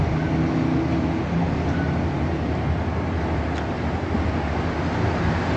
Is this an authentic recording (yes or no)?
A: yes